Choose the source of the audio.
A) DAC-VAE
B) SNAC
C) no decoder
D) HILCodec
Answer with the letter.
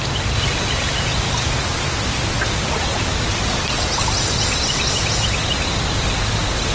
C